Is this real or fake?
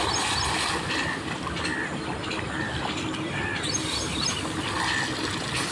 real